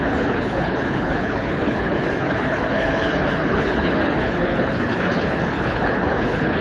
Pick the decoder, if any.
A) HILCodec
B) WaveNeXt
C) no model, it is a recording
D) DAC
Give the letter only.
A